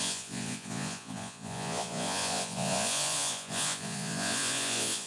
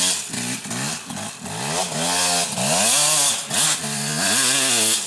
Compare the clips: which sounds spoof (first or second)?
first